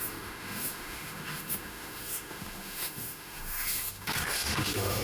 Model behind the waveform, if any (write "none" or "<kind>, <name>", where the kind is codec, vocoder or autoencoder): autoencoder, DAC-VAE